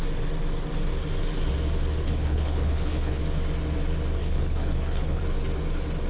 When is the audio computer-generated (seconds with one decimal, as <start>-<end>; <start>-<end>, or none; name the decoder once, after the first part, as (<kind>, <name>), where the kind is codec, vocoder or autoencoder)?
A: 2.0-3.2 (codec, HILCodec); 4.2-5.2